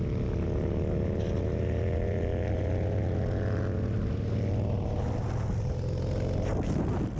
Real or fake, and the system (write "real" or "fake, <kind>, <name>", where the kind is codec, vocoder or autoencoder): real